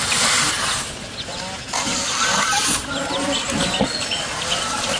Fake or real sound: real